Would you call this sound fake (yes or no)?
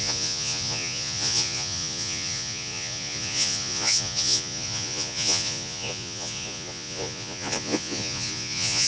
yes